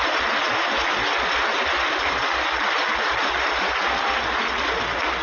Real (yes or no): yes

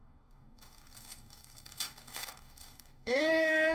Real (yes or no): no